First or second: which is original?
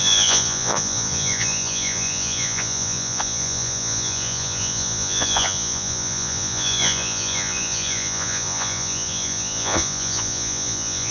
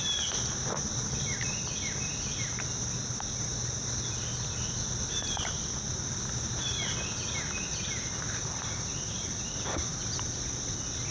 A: second